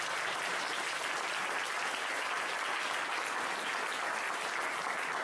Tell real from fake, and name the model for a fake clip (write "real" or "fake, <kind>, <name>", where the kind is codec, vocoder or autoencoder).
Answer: real